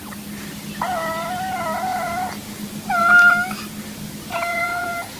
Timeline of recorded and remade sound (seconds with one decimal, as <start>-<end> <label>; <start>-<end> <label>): 0.0-4.5 recorded; 4.5-5.2 remade